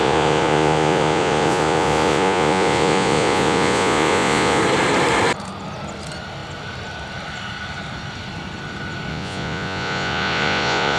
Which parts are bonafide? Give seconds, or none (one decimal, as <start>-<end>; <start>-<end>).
4.6-9.1